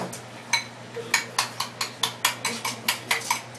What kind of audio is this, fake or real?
real